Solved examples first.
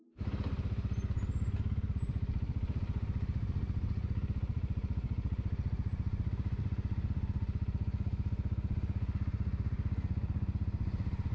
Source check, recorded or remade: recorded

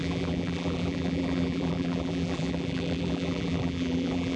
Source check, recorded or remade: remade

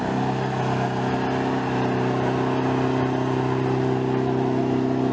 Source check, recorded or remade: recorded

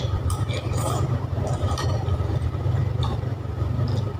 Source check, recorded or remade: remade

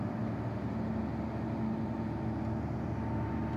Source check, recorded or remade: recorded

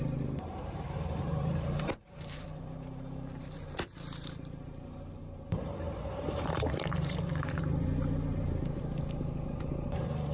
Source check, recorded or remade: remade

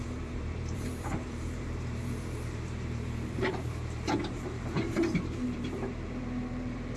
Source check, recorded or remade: remade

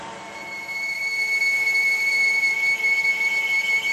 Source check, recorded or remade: remade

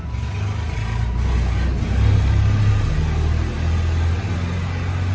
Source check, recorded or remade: recorded